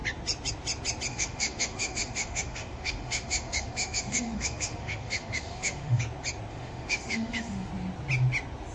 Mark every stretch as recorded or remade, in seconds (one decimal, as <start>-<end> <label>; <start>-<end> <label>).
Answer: 0.0-1.1 recorded; 1.1-6.0 remade; 6.0-6.5 recorded; 6.5-7.7 remade; 7.7-8.7 recorded